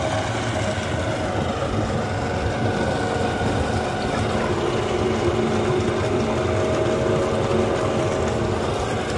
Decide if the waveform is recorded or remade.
recorded